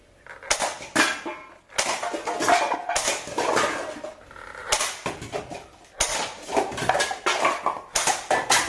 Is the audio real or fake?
real